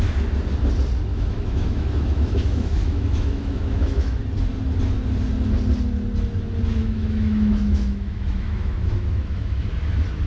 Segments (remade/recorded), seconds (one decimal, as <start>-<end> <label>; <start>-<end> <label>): 0.0-1.1 recorded; 1.1-4.2 remade; 4.2-6.8 recorded; 6.8-9.6 remade; 9.6-10.3 recorded